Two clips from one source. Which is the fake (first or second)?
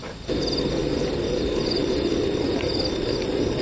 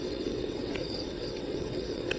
second